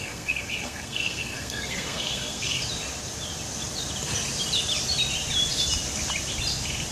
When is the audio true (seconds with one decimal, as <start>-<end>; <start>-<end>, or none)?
2.6-6.9